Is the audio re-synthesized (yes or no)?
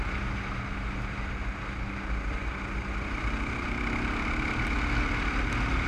no